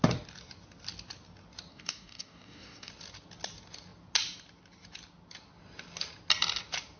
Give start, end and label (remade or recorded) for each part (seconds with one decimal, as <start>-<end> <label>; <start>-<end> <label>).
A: 0.0-1.7 recorded; 1.7-2.9 remade; 2.9-7.0 recorded